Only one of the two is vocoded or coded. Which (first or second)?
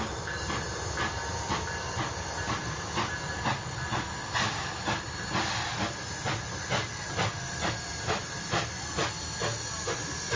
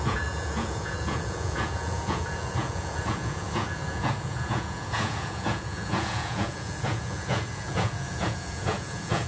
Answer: second